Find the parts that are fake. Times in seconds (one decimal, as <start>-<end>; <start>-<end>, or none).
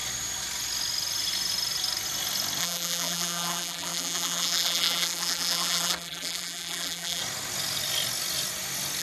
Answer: 2.6-7.2